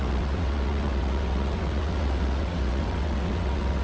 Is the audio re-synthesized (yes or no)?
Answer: yes